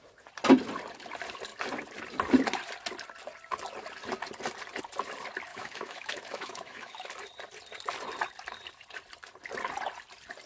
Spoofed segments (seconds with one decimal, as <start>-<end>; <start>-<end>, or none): 5.5-7.1